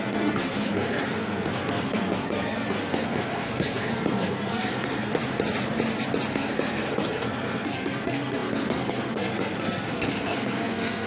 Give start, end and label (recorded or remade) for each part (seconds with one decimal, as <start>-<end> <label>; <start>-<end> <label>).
0.0-5.1 remade; 5.1-6.3 recorded; 6.3-11.1 remade